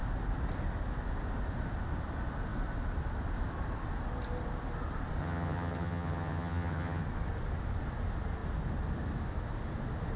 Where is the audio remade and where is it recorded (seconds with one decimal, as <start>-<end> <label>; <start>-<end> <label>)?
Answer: 0.0-5.2 recorded; 5.2-7.0 remade; 7.0-10.2 recorded